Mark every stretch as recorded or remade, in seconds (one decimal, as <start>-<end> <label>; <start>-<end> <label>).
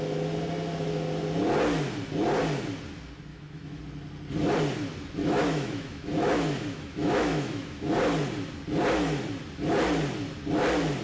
0.0-3.3 recorded; 3.3-3.8 remade; 3.8-5.2 recorded; 5.2-7.9 remade; 7.9-11.0 recorded